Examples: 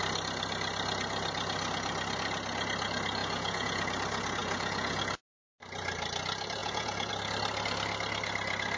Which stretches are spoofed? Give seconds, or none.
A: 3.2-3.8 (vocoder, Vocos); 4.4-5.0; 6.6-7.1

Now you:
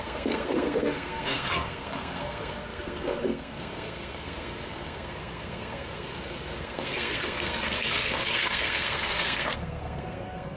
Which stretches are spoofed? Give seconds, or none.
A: 0.0-10.6 (codec, SNAC)

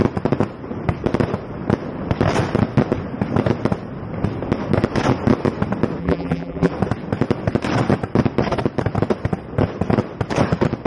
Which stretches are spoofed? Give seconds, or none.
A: 6.0-6.7 (vocoder, BigVGAN v2)